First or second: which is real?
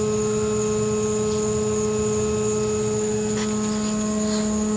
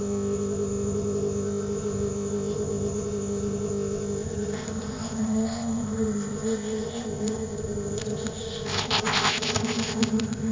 first